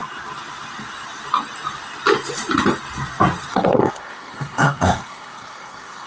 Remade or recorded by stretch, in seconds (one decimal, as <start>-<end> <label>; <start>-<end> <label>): 0.0-3.5 recorded; 3.5-6.1 remade